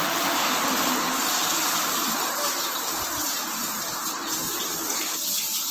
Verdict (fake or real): fake